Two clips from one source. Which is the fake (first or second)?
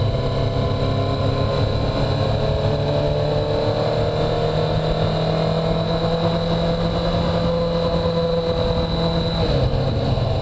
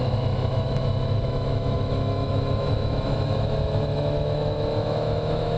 second